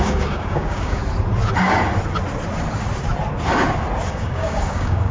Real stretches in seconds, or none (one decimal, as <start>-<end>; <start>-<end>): 1.0-4.1